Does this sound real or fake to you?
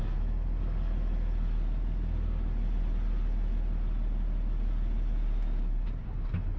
real